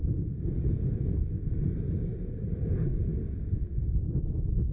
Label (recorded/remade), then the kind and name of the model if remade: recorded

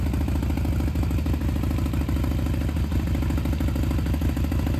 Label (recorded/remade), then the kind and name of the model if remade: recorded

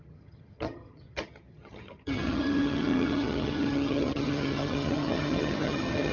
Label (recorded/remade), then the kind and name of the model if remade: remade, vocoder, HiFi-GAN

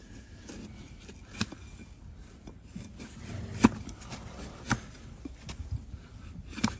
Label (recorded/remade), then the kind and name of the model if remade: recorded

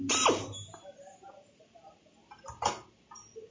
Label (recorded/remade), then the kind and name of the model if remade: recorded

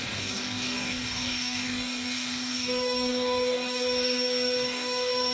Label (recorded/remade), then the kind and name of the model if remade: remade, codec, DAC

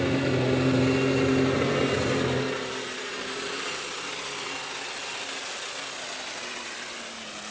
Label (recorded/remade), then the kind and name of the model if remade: recorded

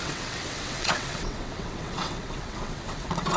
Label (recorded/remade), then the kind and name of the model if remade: remade, vocoder, WaveNeXt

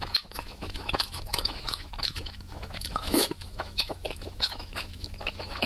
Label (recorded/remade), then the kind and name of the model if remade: remade, autoencoder, DAC-VAE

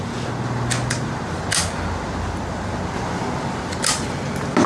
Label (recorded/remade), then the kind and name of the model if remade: recorded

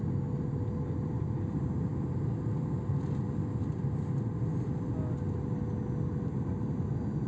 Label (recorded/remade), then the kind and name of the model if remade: recorded